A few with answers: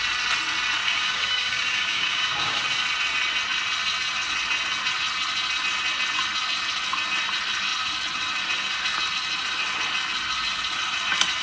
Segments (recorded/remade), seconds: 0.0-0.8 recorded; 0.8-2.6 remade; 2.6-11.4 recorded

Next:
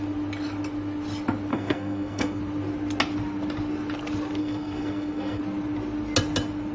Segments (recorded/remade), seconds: 0.0-1.5 recorded; 1.5-2.4 remade; 2.4-4.4 recorded; 4.4-5.4 remade; 5.4-6.7 recorded

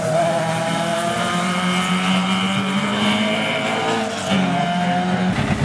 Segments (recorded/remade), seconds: 0.0-0.9 recorded; 0.9-3.8 remade; 3.8-5.6 recorded

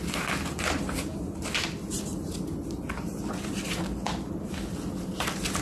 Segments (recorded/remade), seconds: 0.0-5.6 recorded

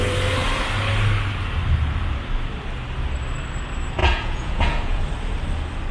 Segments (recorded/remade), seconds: 0.0-4.0 recorded; 4.0-5.0 remade; 5.0-5.9 recorded

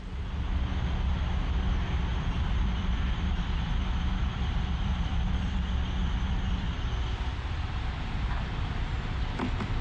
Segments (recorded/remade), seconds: 0.0-2.1 recorded; 2.1-6.9 remade; 6.9-9.8 recorded

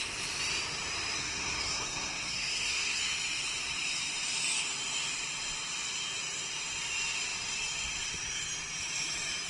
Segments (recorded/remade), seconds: 0.0-1.2 recorded; 1.2-3.0 remade; 3.0-9.5 recorded